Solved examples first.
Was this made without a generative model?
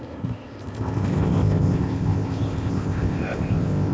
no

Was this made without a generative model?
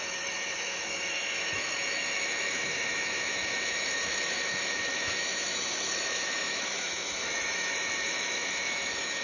no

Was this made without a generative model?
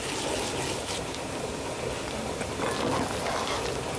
yes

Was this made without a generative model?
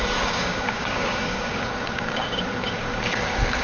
no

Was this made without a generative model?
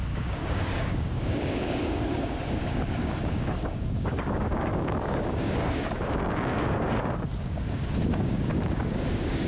no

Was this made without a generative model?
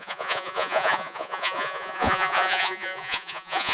no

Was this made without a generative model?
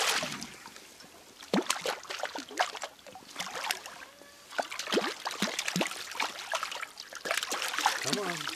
yes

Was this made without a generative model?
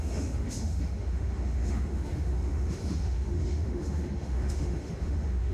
no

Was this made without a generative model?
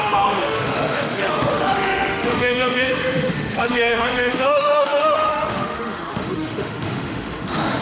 no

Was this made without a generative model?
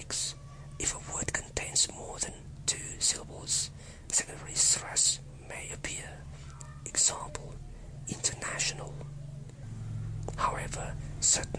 yes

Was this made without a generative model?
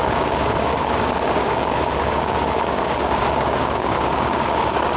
no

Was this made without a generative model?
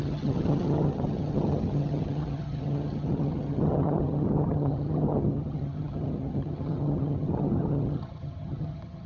no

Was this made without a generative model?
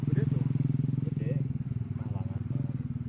yes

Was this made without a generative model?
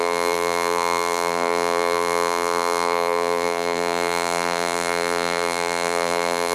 no